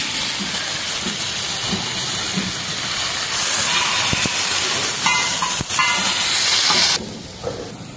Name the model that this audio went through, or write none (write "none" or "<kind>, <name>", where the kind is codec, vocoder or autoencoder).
none